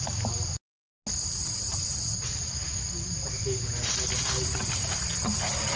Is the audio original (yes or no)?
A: yes